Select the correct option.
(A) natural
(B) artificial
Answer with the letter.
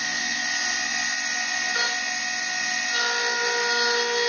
A